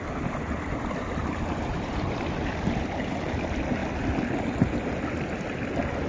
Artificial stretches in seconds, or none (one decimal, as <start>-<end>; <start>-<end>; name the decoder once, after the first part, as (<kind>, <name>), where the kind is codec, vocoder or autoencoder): 1.2-1.9 (vocoder, BigVGAN v2)